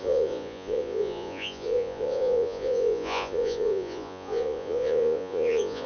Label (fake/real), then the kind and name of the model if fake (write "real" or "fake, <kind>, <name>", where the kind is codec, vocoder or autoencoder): fake, vocoder, Vocos